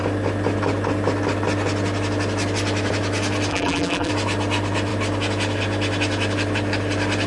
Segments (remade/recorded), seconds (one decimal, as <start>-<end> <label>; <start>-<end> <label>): 0.0-3.5 recorded; 3.5-4.1 remade; 4.1-7.3 recorded